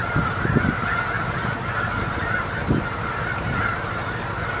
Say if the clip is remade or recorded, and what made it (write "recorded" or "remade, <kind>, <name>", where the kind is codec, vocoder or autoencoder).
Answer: remade, vocoder, BigVGAN v2